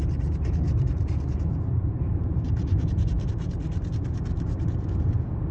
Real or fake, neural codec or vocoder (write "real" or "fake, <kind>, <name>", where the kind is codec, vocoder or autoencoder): fake, vocoder, BigVGAN v2